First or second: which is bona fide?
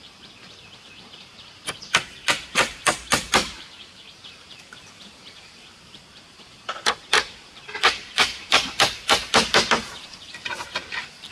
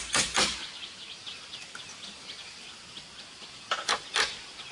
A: second